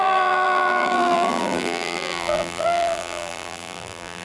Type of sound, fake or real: fake